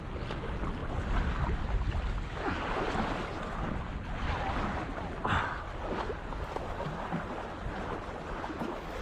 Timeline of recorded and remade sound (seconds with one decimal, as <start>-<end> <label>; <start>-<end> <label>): 0.0-9.0 recorded